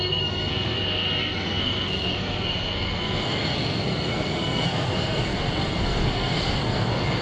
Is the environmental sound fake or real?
fake